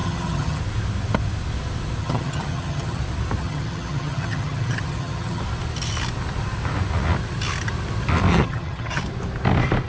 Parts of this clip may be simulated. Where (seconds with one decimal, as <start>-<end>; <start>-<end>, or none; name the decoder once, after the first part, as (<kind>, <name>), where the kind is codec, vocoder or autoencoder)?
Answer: 0.0-0.6 (vocoder, HiFi-GAN); 2.0-3.0; 3.4-5.4; 8.3-9.0